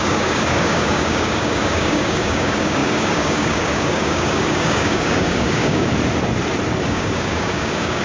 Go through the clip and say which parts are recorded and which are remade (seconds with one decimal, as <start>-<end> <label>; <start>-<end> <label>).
0.0-5.9 remade; 5.9-6.9 recorded; 6.9-8.0 remade